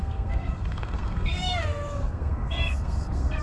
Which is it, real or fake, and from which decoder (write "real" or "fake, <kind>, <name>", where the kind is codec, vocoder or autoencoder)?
fake, codec, SNAC